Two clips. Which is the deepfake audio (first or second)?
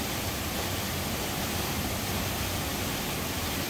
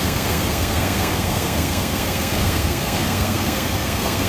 second